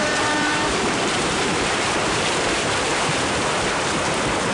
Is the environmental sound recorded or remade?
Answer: remade